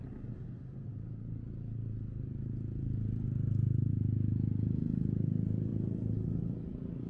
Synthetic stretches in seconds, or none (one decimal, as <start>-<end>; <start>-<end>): none

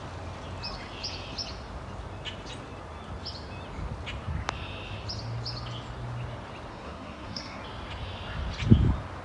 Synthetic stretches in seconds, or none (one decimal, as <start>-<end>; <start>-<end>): 6.7-7.6

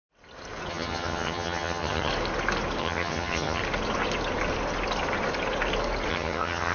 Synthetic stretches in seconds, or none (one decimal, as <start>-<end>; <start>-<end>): 0.7-2.1; 2.8-3.6; 6.1-6.7

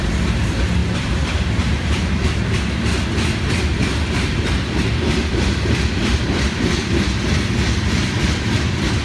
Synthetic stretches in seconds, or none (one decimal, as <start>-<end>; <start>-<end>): 3.7-6.9

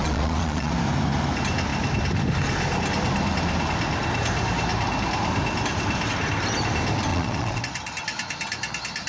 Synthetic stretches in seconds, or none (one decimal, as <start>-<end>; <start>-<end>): 0.0-0.7; 7.1-7.6

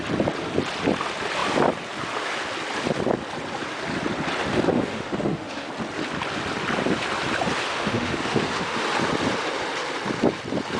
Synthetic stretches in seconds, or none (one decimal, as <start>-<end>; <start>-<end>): 4.5-5.7; 7.7-8.8

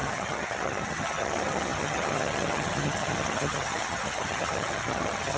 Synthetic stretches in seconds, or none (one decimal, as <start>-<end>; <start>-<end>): 0.0-5.4